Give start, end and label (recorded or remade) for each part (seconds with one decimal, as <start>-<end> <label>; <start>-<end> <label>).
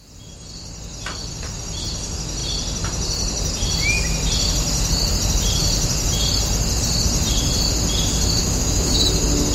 0.0-8.4 recorded; 8.4-8.9 remade; 8.9-9.5 recorded